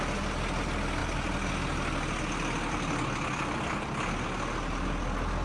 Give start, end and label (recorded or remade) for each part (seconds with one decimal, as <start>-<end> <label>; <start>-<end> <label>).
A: 0.0-5.4 recorded